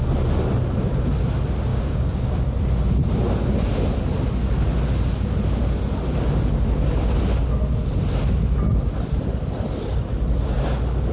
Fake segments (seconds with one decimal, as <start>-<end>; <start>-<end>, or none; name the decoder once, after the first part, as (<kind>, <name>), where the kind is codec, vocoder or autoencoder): 1.7-2.3 (codec, DAC)